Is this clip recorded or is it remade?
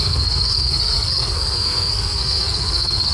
remade